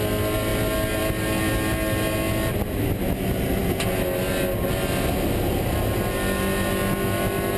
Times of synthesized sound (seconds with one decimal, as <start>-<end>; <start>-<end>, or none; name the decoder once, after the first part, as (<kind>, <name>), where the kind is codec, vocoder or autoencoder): none